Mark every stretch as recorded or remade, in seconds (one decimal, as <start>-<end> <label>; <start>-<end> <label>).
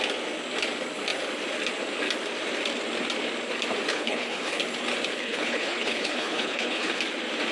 0.0-3.9 recorded; 3.9-4.6 remade; 4.6-5.2 recorded; 5.2-7.0 remade; 7.0-7.5 recorded